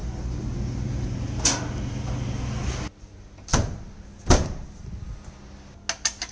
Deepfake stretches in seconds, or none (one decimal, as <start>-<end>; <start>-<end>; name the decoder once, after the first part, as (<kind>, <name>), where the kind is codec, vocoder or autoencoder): none